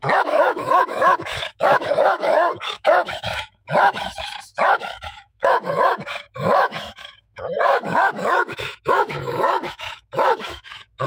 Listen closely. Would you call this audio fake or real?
fake